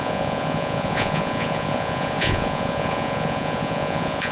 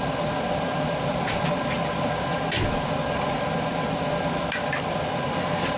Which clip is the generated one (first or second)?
first